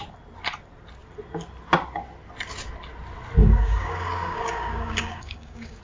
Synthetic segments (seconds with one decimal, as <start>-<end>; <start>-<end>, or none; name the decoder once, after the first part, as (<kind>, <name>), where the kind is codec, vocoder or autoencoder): 3.4-5.8 (codec, DAC)